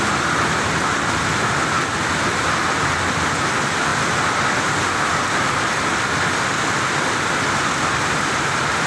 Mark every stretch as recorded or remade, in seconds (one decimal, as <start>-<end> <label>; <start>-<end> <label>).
0.0-8.9 recorded